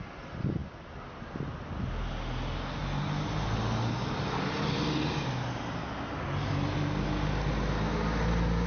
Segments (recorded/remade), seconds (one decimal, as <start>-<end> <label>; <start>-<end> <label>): 0.0-8.7 recorded